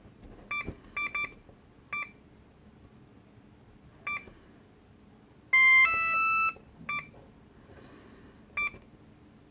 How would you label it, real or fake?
real